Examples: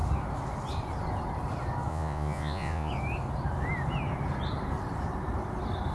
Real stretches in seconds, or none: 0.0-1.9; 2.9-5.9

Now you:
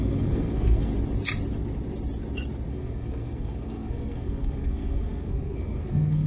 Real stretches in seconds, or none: 0.9-2.7

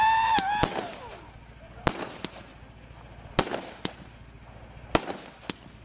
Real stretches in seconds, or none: 0.0-2.5; 3.3-5.8